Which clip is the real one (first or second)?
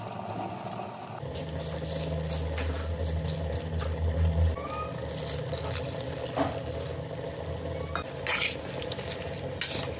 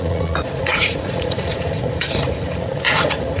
first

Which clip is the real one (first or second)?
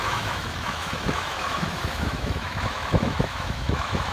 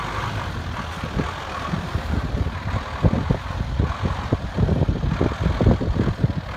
second